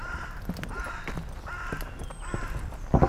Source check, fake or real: real